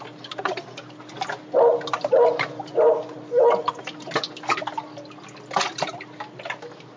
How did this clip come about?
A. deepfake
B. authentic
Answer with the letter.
B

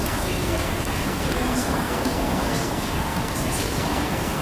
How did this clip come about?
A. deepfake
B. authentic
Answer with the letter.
A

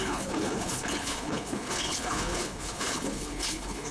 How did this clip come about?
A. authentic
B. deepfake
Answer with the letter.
B